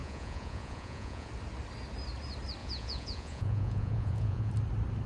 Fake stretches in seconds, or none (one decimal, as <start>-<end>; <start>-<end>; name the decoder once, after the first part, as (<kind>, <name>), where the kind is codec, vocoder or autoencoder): 0.0-1.3 (vocoder, Vocos); 2.6-4.5